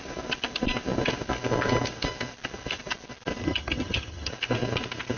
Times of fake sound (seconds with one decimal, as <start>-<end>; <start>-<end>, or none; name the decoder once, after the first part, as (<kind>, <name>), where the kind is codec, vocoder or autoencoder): 3.4-4.3 (vocoder, HiFi-GAN)

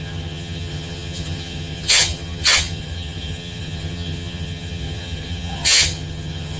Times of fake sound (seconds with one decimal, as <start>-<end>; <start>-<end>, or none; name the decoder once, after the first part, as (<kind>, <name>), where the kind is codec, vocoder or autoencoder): 0.0-6.6 (vocoder, HiFi-GAN)

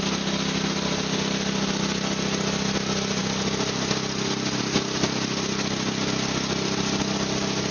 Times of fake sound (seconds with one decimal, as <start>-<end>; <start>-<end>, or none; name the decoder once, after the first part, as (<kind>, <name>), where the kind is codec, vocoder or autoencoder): none

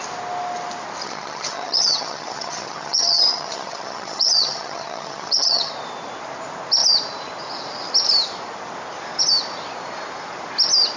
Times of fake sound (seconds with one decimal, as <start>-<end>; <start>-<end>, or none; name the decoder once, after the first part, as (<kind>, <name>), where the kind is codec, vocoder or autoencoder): 1.0-5.7 (vocoder, HiFi-GAN)

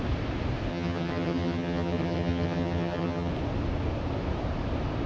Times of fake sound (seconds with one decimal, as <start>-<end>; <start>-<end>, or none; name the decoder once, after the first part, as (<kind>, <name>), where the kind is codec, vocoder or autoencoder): 0.7-3.3 (vocoder, HiFi-GAN)

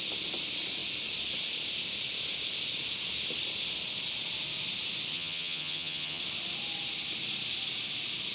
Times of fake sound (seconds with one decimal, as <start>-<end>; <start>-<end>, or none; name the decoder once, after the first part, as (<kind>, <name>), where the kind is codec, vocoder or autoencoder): 5.1-6.2 (vocoder, HiFi-GAN)